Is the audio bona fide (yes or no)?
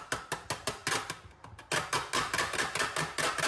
yes